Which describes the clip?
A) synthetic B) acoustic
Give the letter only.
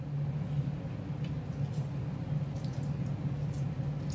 B